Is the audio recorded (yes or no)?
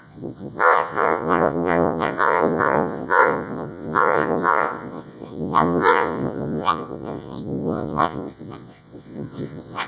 no